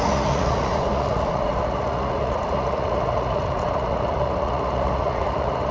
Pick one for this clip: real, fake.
fake